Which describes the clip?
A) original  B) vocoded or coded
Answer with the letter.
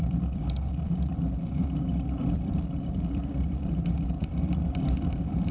B